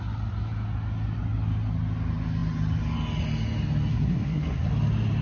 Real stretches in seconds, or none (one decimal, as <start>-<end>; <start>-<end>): 0.0-3.9; 4.7-5.2